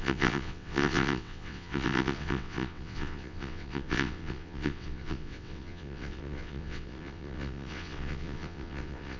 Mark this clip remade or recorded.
remade